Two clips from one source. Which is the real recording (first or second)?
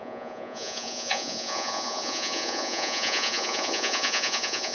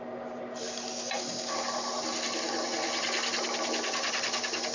second